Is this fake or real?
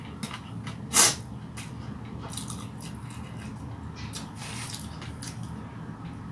real